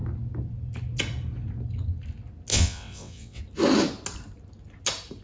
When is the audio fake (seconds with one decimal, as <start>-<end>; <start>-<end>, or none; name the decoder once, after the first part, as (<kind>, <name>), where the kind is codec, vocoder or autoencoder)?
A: 2.5-3.4 (vocoder, WaveNeXt)